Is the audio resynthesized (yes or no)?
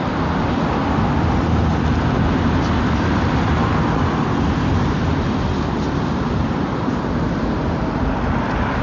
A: no